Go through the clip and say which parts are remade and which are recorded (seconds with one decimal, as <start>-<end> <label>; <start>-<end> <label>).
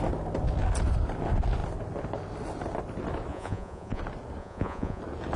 0.0-3.3 recorded; 3.3-4.0 remade; 4.0-4.4 recorded; 4.4-5.0 remade; 5.0-5.4 recorded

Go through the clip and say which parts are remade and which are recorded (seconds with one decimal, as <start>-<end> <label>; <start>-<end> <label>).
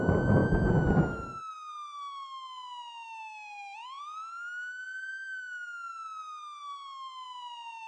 0.0-7.9 recorded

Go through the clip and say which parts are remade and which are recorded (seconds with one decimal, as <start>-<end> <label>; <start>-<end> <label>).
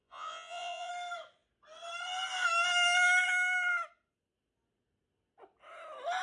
0.0-0.9 remade; 0.9-6.2 recorded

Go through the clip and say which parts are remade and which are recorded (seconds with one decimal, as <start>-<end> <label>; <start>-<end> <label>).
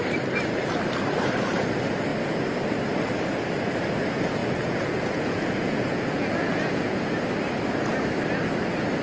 0.0-4.4 recorded; 4.4-7.0 remade; 7.0-9.0 recorded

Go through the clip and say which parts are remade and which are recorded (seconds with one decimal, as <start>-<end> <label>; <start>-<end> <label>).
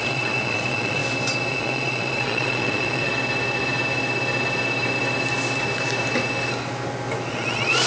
0.0-1.0 remade; 1.0-1.5 recorded; 1.5-3.1 remade; 3.1-7.3 recorded; 7.3-7.9 remade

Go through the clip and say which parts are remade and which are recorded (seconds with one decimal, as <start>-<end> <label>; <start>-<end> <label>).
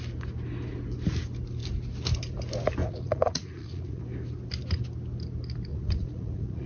0.0-2.8 recorded; 2.8-4.0 remade; 4.0-5.7 recorded; 5.7-6.7 remade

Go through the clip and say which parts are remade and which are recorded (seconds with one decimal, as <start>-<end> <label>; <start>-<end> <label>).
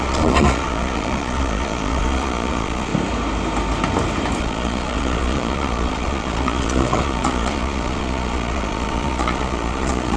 0.0-2.9 remade; 2.9-4.4 recorded; 4.4-10.2 remade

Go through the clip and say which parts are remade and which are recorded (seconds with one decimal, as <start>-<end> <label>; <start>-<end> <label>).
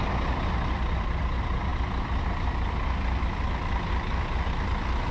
0.0-5.1 recorded